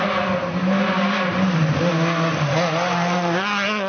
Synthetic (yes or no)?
no